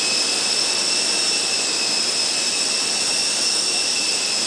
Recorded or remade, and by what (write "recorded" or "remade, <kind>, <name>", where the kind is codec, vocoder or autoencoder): recorded